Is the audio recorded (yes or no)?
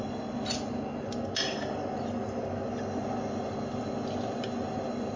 yes